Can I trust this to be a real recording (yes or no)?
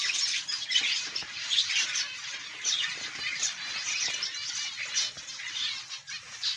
yes